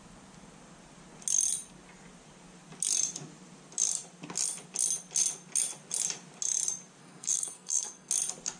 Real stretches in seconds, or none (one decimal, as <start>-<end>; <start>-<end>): 0.0-7.0; 8.1-8.6